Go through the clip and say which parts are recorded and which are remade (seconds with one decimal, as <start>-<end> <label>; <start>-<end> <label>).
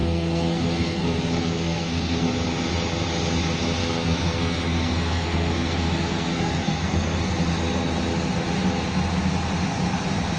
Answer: 0.0-2.3 remade; 2.3-3.8 recorded; 3.8-7.3 remade; 7.3-10.4 recorded